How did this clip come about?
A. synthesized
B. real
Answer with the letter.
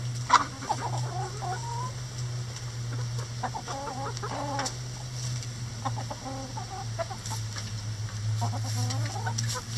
B